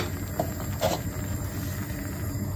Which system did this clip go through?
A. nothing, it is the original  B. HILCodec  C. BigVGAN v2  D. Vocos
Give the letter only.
A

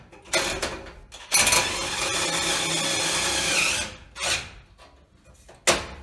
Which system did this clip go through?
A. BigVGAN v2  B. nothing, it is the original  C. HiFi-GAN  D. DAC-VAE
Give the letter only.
B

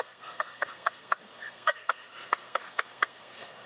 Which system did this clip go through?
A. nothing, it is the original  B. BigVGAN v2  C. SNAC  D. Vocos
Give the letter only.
C